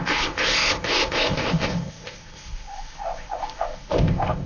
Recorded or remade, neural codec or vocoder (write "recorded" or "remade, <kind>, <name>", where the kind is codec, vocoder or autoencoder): remade, codec, ZipCodec